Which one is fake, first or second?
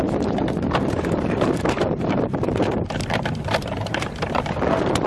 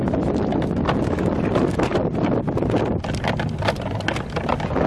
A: first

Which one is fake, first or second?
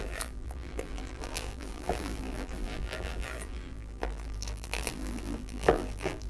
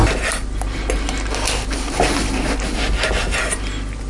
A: first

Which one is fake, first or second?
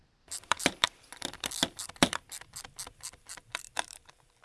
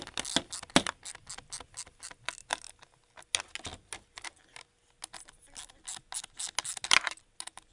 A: first